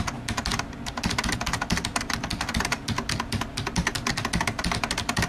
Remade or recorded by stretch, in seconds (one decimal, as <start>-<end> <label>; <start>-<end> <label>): 0.0-5.3 recorded